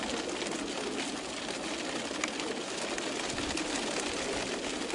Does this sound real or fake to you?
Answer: real